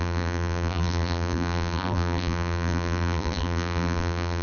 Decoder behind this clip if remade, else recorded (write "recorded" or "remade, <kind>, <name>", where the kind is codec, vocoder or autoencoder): remade, vocoder, BigVGAN v2